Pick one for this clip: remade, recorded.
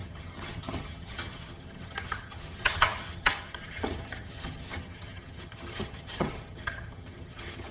remade